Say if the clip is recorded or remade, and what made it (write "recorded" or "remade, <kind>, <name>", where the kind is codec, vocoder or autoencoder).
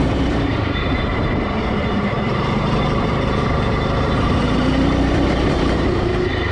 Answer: remade, vocoder, BigVGAN v2